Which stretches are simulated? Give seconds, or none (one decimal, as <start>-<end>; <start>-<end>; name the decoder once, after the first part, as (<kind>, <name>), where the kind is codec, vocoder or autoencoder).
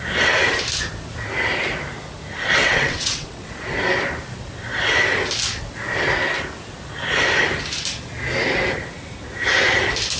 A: 2.6-3.5 (vocoder, WaveNeXt)